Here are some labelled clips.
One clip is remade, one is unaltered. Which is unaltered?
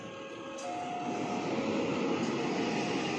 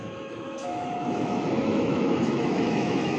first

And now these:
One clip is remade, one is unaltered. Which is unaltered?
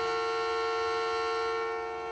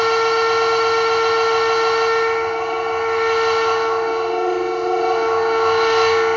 first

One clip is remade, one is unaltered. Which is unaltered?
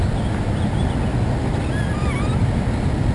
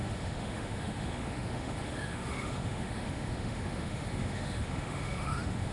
first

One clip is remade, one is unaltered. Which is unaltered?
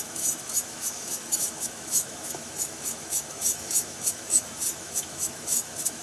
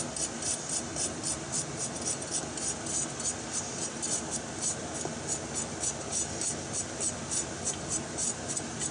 second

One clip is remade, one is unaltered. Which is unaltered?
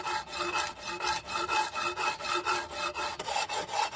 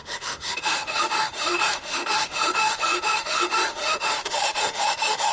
first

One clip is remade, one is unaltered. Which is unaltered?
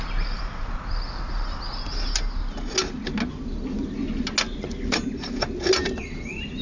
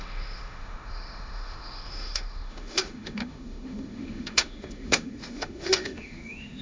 first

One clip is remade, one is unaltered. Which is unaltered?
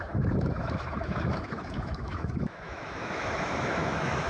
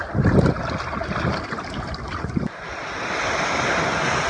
second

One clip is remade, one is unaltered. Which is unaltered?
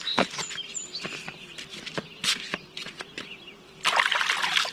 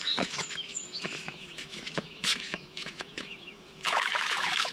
first